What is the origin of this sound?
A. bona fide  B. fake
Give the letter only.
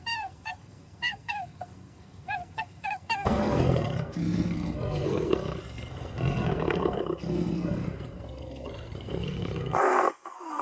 B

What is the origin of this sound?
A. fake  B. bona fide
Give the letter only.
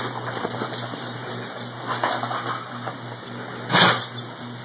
B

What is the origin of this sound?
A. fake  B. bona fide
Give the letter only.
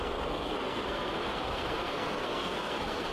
A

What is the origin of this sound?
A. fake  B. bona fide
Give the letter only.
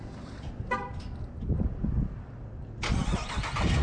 B